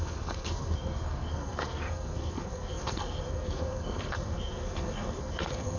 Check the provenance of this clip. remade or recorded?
remade